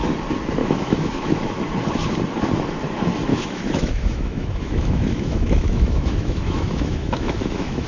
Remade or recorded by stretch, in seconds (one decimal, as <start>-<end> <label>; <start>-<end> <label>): 0.0-0.6 recorded; 0.6-1.6 remade; 1.6-3.3 recorded; 3.3-7.9 remade